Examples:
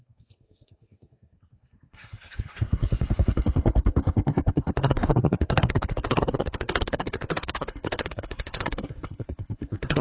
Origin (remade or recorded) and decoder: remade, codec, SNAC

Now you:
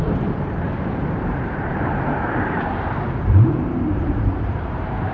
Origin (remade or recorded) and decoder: remade, vocoder, BigVGAN v2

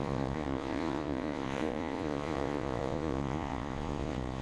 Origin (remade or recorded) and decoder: remade, vocoder, Vocos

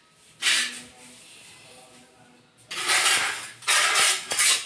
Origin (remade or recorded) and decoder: recorded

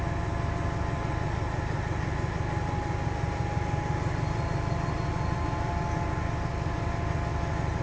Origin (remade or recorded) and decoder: recorded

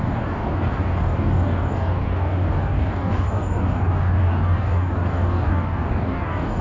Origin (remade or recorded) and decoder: remade, codec, DAC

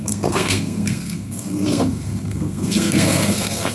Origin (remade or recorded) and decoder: remade, codec, SNAC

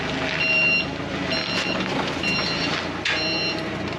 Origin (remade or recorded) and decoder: recorded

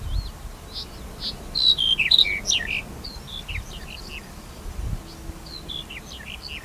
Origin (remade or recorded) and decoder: recorded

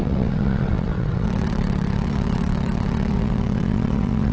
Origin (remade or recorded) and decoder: remade, vocoder, WaveNeXt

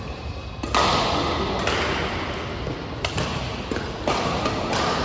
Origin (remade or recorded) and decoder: recorded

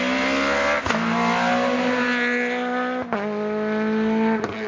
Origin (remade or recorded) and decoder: recorded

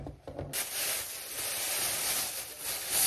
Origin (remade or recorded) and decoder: recorded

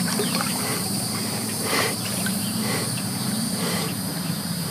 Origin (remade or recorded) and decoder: remade, vocoder, BigVGAN v2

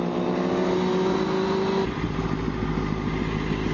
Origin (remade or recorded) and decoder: recorded